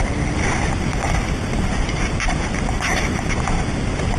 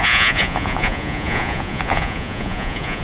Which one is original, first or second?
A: first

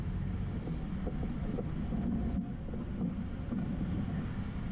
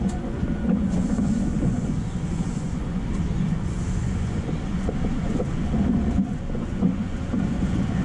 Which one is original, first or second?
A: first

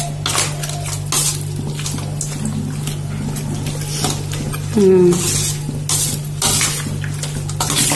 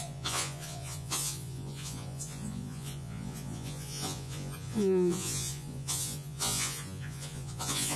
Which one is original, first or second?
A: first